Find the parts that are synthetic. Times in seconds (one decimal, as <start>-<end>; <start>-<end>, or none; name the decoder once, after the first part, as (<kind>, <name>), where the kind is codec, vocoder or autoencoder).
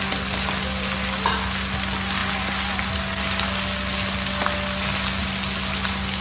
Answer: none